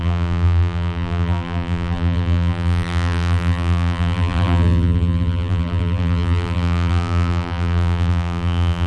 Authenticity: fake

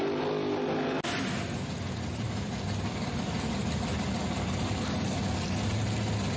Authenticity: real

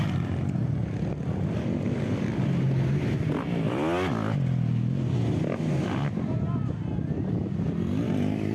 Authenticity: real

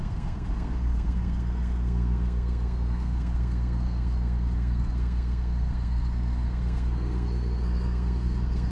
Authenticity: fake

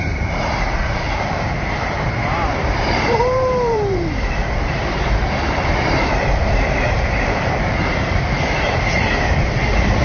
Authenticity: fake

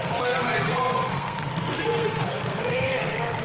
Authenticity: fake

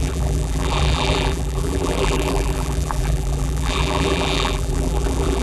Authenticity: fake